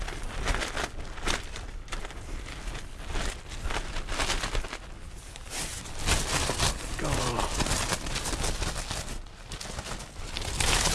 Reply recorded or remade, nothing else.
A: recorded